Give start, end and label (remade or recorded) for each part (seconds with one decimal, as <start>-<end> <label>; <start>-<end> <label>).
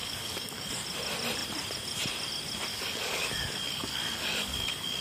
0.0-0.7 remade; 0.7-2.7 recorded; 2.7-5.0 remade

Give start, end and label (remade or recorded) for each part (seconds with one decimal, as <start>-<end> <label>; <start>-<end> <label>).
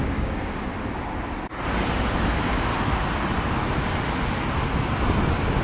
0.0-0.7 remade; 0.7-2.3 recorded; 2.3-2.7 remade; 2.7-5.6 recorded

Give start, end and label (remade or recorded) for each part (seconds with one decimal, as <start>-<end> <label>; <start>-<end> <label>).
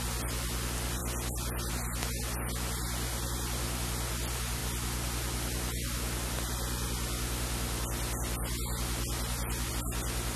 0.0-10.4 recorded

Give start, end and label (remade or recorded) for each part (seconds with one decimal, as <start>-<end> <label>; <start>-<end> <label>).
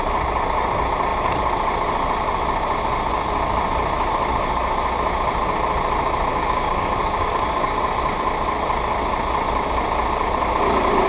0.0-6.3 recorded; 6.3-7.8 remade; 7.8-11.1 recorded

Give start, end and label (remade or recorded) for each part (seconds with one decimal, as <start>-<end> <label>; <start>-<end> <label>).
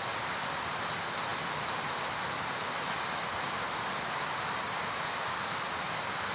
0.0-6.3 recorded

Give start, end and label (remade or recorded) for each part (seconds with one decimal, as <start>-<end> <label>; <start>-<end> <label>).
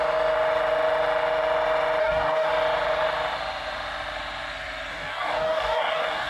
0.0-2.0 recorded; 2.0-2.5 remade; 2.5-4.9 recorded; 4.9-6.3 remade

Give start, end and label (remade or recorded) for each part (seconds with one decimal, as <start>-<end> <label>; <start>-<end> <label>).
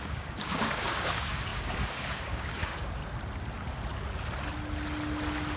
0.0-3.0 remade; 3.0-5.6 recorded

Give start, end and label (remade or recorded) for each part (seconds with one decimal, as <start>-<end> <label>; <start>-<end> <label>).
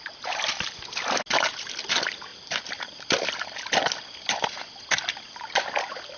0.0-6.2 recorded